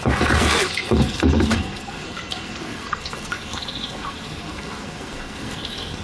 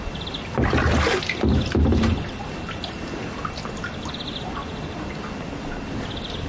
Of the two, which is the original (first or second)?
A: second